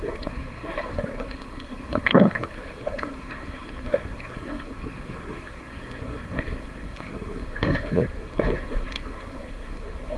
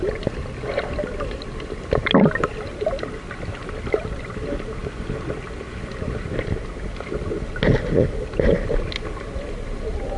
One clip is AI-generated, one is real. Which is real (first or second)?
second